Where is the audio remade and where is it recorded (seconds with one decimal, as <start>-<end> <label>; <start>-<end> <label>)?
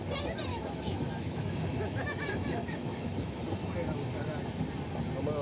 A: 0.0-0.5 recorded; 0.5-3.4 remade; 3.4-5.4 recorded